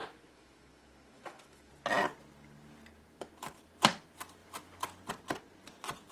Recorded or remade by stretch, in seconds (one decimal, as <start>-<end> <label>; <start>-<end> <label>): 0.0-1.7 remade; 1.7-6.1 recorded